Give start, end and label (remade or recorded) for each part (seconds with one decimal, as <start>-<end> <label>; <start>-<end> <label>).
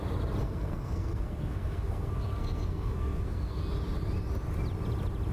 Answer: 0.0-0.4 recorded; 0.4-3.6 remade; 3.6-5.3 recorded